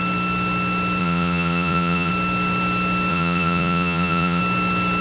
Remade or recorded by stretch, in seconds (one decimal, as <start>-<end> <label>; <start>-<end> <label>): 0.0-1.0 recorded; 1.0-2.1 remade; 2.1-3.1 recorded; 3.1-4.4 remade; 4.4-5.0 recorded